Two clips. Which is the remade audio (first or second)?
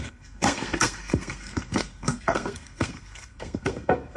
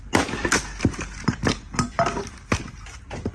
first